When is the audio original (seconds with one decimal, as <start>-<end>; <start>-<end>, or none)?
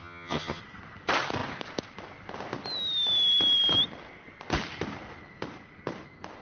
0.6-6.4